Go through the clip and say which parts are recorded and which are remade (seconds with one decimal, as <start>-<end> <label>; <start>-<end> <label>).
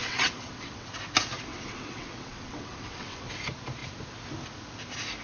0.0-0.9 remade; 0.9-1.5 recorded; 1.5-3.3 remade; 3.3-5.2 recorded